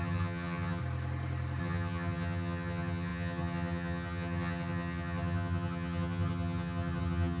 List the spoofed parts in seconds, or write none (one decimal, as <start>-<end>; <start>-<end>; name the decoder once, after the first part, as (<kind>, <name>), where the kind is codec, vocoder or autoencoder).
0.0-0.8 (vocoder, HiFi-GAN); 1.6-7.4